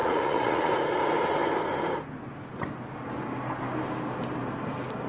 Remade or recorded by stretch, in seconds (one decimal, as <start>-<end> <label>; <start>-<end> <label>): 0.0-0.7 remade; 0.7-5.1 recorded